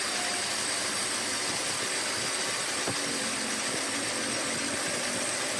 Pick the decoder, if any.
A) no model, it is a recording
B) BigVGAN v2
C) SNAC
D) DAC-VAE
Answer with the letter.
A